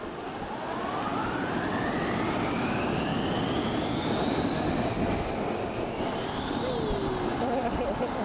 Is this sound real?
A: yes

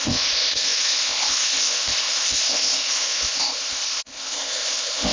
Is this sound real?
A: no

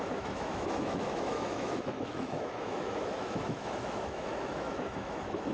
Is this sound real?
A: no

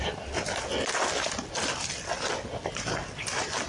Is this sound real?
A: yes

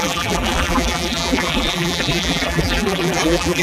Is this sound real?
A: no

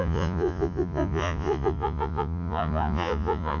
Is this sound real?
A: no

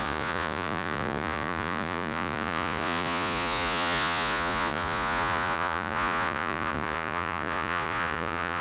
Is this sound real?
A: no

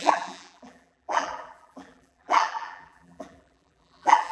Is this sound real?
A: no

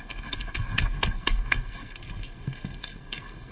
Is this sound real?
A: no